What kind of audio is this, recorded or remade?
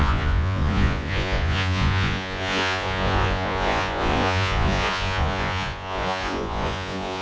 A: remade